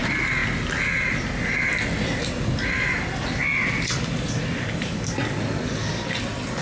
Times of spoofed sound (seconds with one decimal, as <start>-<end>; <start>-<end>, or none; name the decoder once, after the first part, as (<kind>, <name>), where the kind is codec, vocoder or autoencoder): none